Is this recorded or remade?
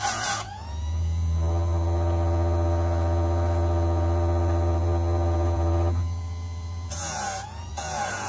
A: remade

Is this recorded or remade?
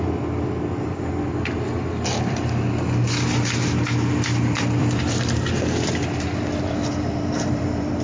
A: remade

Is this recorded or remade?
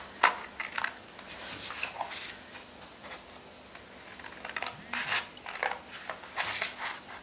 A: recorded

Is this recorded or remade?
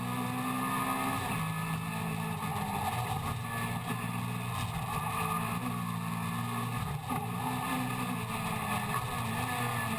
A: recorded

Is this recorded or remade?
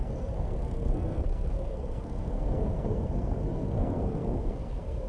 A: remade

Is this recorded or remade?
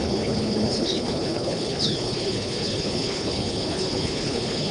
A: remade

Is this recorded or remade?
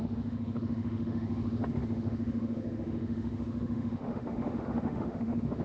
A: remade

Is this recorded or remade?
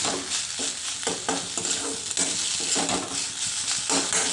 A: recorded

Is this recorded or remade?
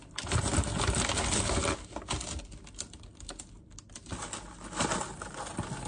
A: recorded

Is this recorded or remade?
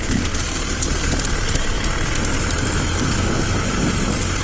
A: recorded